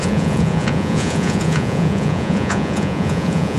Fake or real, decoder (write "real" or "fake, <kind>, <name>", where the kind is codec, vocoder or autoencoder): fake, vocoder, Vocos